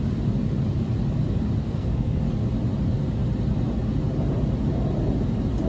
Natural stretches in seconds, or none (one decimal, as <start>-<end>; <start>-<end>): 0.0-1.6; 2.2-5.7